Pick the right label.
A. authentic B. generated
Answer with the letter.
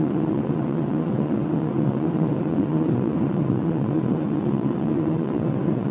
B